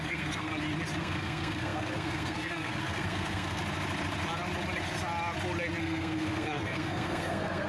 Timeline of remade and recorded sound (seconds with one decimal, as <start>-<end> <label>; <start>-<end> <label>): 0.0-0.5 remade; 0.5-1.0 recorded; 1.0-3.6 remade; 3.6-5.8 recorded; 5.8-7.7 remade